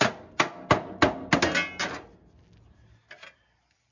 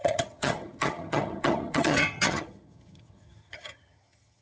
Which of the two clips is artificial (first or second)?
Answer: second